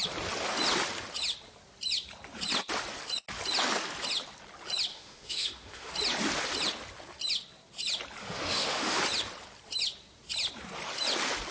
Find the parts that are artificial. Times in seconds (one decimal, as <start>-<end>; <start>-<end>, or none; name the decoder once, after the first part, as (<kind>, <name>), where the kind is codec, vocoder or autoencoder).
4.9-5.9 (autoencoder, DAC-VAE); 8.2-9.0